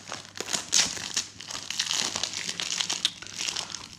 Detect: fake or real real